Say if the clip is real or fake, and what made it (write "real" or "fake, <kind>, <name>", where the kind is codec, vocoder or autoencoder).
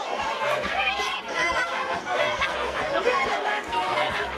fake, codec, SNAC